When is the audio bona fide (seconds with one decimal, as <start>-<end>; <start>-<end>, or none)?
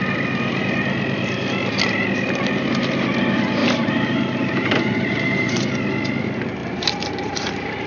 0.0-3.6; 5.6-6.6; 7.5-7.9